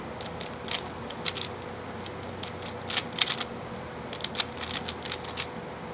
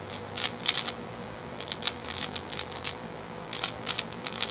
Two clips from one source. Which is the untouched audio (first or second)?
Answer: first